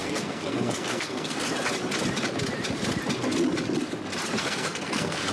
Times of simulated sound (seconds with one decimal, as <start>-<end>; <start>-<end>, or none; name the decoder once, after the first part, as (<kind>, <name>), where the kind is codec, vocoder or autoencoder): 0.0-1.4 (codec, SNAC); 4.4-5.3